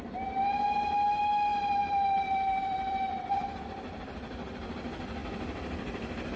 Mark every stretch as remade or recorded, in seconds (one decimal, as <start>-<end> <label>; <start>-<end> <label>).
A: 0.0-1.5 recorded; 1.5-3.6 remade; 3.6-6.4 recorded